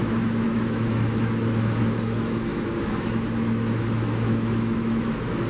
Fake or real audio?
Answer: fake